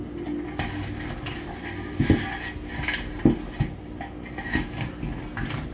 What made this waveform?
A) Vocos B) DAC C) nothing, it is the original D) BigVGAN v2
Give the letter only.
C